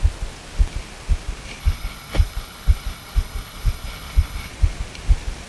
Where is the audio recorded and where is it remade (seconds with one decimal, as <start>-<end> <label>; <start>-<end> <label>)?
0.0-1.6 recorded; 1.6-4.5 remade; 4.5-5.5 recorded